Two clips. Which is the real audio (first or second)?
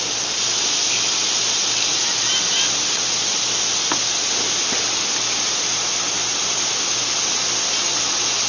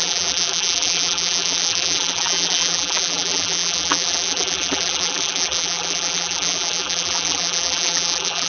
first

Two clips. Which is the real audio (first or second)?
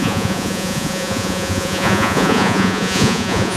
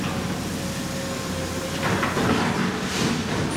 second